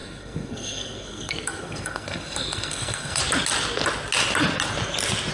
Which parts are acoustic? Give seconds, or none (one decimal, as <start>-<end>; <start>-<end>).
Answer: 3.2-5.3